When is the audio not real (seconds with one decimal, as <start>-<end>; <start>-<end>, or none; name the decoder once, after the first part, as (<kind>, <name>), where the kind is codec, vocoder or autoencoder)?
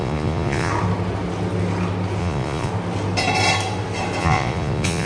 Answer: 0.0-0.7 (vocoder, Vocos); 2.2-2.7; 4.2-5.1